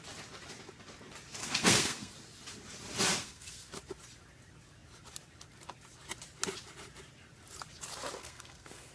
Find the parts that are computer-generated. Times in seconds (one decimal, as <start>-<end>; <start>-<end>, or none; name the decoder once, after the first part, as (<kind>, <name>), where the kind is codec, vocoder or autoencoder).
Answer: 1.4-2.1 (codec, SNAC); 3.2-3.7; 8.2-8.9